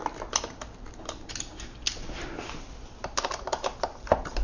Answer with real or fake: real